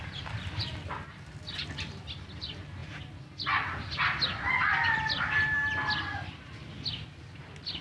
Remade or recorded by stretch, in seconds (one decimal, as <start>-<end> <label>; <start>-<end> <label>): 0.0-7.8 recorded